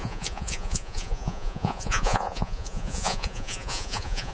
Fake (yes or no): yes